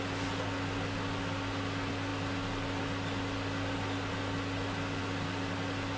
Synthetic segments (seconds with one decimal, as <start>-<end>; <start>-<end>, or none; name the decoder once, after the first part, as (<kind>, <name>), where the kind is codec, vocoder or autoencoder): none